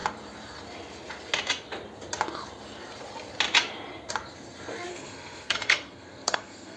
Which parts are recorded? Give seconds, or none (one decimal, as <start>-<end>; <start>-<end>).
0.0-4.9